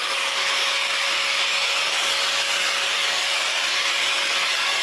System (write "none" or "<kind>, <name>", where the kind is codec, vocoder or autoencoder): codec, DAC